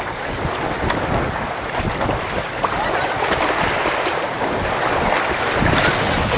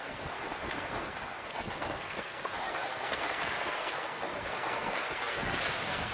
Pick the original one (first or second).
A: first